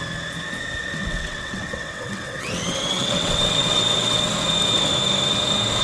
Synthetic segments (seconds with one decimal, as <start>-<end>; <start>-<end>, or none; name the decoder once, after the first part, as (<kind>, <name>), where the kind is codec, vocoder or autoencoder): 0.8-4.3 (vocoder, WaveNeXt)